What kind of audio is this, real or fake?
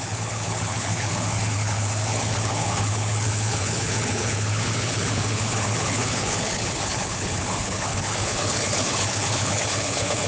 fake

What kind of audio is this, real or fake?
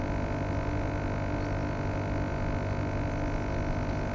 real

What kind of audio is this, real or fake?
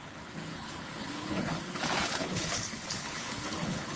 fake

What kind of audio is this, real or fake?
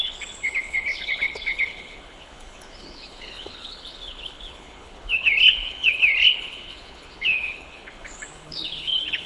fake